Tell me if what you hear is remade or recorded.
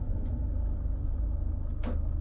recorded